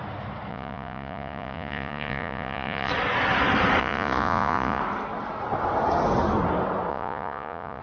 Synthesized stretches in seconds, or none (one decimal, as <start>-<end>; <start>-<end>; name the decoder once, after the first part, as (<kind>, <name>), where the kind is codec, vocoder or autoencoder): 0.5-2.9 (vocoder, Vocos); 3.8-4.8; 6.9-7.8